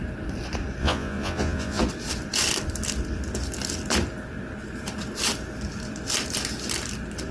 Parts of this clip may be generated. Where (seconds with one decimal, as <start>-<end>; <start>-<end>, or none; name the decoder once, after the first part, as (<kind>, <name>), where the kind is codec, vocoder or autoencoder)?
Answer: 0.8-1.8 (vocoder, Vocos)